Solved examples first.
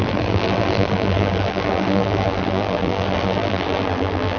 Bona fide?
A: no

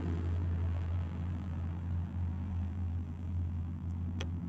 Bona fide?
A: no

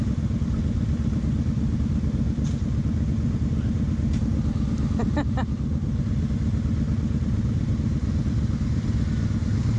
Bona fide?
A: yes